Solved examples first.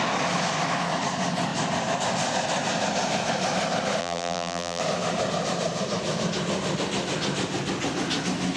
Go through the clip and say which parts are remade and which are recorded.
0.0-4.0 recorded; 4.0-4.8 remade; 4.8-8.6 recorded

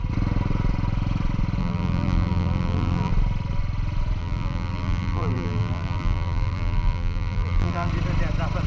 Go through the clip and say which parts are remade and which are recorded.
0.0-1.6 recorded; 1.6-3.1 remade; 3.1-4.2 recorded; 4.2-7.9 remade; 7.9-8.7 recorded

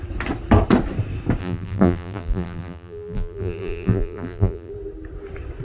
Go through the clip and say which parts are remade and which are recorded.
0.0-1.4 recorded; 1.4-4.7 remade; 4.7-5.6 recorded

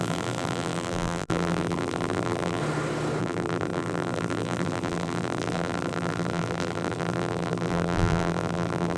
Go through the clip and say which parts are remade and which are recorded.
0.0-2.6 remade; 2.6-3.2 recorded; 3.2-9.0 remade

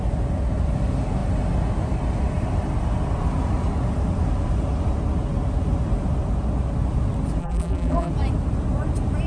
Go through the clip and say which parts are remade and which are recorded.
0.0-7.4 recorded; 7.4-8.1 remade; 8.1-9.3 recorded

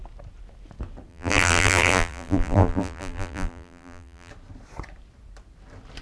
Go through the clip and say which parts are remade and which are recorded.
0.0-1.1 recorded; 1.1-4.3 remade; 4.3-6.0 recorded

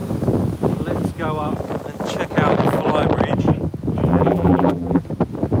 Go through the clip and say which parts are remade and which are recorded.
0.0-4.1 recorded; 4.1-5.0 remade; 5.0-5.6 recorded